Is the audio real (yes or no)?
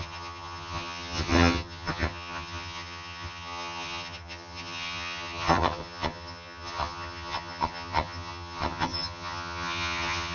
no